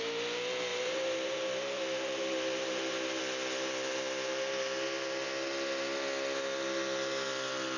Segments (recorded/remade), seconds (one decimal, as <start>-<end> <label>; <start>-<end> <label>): 0.0-0.7 recorded; 0.7-3.2 remade; 3.2-7.8 recorded